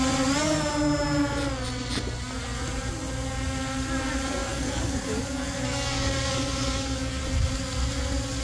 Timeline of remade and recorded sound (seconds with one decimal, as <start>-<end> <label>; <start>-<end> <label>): 0.0-4.4 recorded; 4.4-7.2 remade; 7.2-8.4 recorded